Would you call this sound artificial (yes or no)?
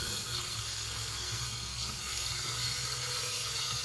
yes